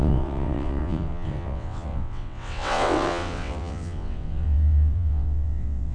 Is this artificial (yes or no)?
yes